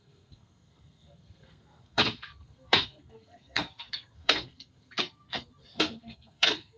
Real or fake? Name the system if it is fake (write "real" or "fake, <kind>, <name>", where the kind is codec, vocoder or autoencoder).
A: fake, codec, SNAC